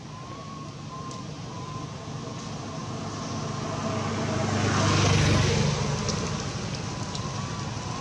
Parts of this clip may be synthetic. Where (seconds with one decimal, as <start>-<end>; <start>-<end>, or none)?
none